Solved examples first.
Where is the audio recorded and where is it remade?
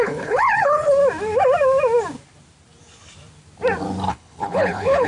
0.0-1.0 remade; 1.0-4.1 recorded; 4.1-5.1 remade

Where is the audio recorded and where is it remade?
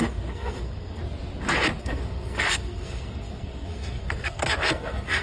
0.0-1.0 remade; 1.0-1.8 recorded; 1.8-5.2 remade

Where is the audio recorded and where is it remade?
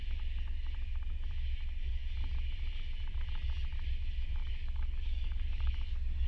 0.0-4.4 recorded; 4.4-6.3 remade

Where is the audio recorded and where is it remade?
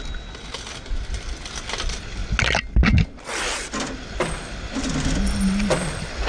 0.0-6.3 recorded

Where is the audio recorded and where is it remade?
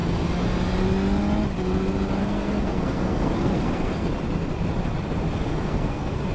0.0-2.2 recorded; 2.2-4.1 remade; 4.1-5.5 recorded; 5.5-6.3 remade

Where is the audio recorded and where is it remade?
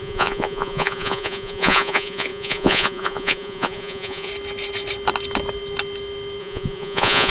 0.0-4.3 remade; 4.3-6.4 recorded; 6.4-7.3 remade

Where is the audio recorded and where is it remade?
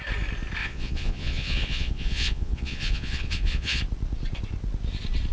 0.0-0.6 recorded; 0.6-3.8 remade; 3.8-5.3 recorded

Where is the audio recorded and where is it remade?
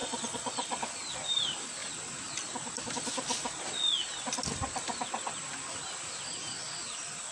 0.0-0.8 remade; 0.8-7.3 recorded